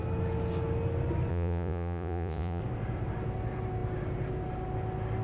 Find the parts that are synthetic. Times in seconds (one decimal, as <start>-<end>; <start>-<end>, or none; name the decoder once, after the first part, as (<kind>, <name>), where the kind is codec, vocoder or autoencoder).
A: 1.3-2.6 (vocoder, Vocos)